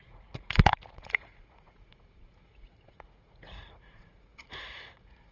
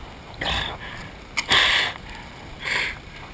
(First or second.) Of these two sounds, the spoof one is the first